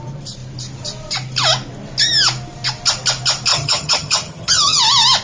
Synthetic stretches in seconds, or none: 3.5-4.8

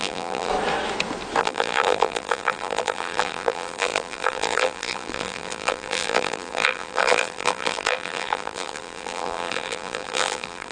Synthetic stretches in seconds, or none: 0.0-0.5; 1.4-10.7

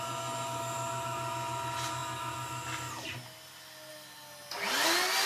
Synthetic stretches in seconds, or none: none

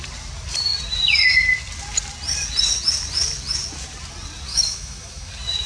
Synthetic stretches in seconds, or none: 4.5-5.3

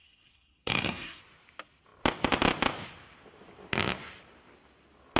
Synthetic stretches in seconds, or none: 0.0-1.2

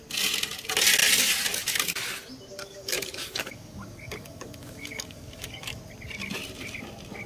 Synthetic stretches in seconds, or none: 2.6-5.8

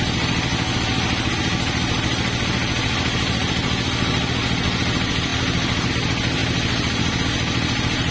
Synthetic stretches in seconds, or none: none